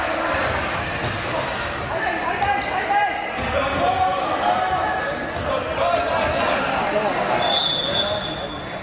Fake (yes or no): no